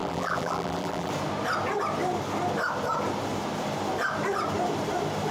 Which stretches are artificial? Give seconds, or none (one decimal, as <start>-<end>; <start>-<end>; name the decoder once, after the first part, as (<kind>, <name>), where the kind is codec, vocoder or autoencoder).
0.0-1.1 (vocoder, BigVGAN v2)